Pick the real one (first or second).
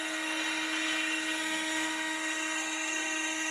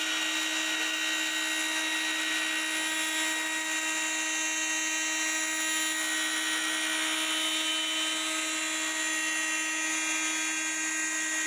second